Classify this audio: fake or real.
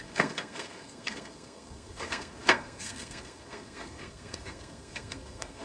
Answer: fake